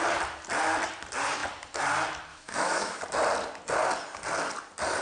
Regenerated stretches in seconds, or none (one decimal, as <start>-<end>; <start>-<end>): 2.3-3.0